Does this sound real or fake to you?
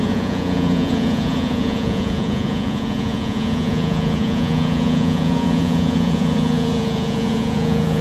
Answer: fake